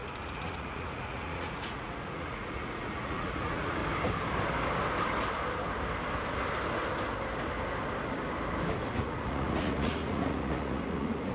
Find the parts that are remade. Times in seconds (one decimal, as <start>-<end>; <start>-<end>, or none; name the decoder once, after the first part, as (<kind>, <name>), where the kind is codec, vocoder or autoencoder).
0.0-3.8 (vocoder, Vocos); 8.9-11.3